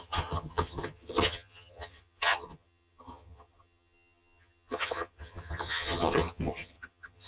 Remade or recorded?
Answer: remade